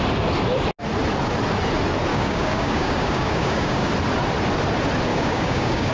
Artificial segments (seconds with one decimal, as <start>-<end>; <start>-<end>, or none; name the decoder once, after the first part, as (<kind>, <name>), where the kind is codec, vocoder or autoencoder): 2.1-3.9 (codec, DAC); 5.1-5.9